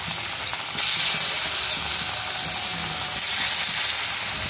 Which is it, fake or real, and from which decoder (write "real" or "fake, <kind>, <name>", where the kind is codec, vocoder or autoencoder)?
real